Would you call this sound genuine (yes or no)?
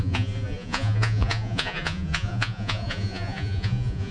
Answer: no